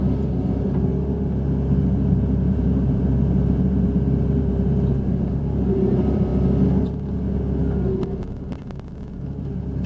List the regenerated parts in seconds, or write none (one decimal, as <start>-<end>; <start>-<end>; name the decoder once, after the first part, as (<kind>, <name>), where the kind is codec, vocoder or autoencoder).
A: 0.0-0.9 (vocoder, BigVGAN v2); 1.8-6.3; 9.4-9.9